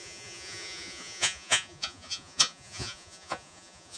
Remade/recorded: remade